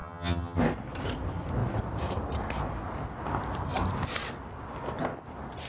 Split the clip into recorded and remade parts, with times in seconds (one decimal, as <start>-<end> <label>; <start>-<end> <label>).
0.0-0.6 remade; 0.6-5.7 recorded